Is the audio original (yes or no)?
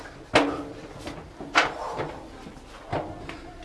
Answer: yes